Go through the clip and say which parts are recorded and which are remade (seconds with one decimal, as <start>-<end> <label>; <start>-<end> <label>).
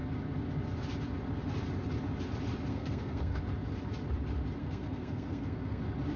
0.0-2.7 recorded; 2.7-3.4 remade; 3.4-4.6 recorded; 4.6-5.8 remade; 5.8-6.2 recorded